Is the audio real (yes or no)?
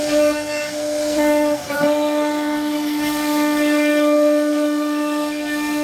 no